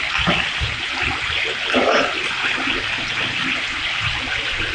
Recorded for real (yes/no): yes